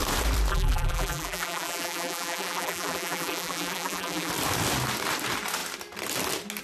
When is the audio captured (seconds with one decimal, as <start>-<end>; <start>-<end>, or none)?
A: 0.0-0.5; 4.3-6.6